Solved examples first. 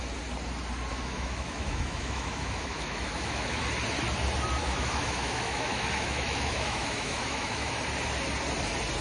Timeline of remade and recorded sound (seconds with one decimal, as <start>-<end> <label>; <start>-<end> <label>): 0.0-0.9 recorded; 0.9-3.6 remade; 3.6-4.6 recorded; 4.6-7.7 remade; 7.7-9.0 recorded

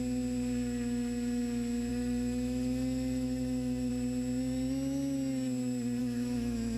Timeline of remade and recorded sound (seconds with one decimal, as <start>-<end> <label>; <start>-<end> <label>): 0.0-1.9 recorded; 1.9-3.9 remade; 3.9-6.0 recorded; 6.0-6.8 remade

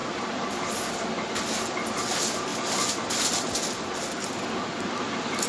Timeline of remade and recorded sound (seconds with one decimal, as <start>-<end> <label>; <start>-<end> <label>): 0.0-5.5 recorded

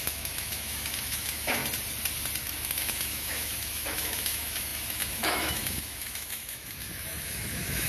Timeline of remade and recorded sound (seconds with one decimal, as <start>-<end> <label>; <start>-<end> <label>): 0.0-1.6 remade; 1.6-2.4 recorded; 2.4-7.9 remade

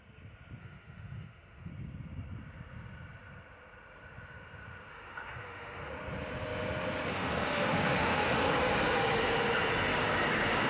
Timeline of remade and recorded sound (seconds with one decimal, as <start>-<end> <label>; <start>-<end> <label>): 0.0-0.6 recorded; 0.6-1.7 remade; 1.7-4.9 recorded; 4.9-5.9 remade; 5.9-7.1 recorded; 7.1-8.5 remade; 8.5-10.7 recorded

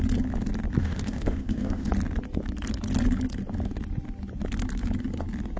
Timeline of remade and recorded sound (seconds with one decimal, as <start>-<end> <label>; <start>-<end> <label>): 0.0-0.8 recorded; 0.8-1.9 remade; 1.9-5.6 recorded

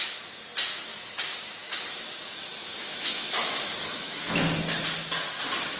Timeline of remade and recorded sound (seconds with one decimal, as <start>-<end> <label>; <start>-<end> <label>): 0.0-0.9 recorded; 0.9-4.4 remade; 4.4-5.8 recorded